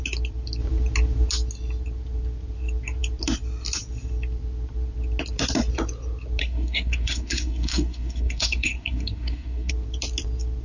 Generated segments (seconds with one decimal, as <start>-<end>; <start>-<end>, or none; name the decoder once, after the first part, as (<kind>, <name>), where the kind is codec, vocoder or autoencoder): 6.4-9.7 (codec, SNAC)